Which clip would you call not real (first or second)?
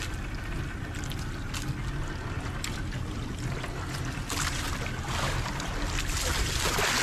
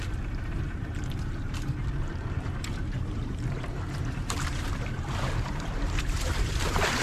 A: second